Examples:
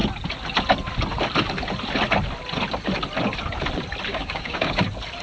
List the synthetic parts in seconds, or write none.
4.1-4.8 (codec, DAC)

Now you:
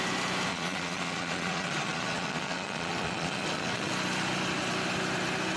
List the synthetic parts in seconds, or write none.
0.5-3.9 (vocoder, Vocos)

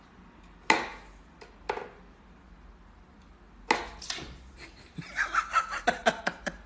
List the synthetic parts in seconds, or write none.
5.5-6.7 (vocoder, BigVGAN v2)

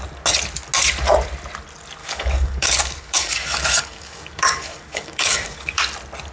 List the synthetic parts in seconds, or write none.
2.0-5.8 (codec, DAC)

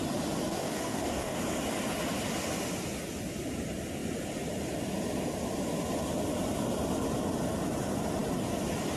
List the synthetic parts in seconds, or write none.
0.5-1.4 (codec, DAC)